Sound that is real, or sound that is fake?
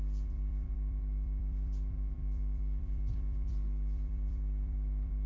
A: fake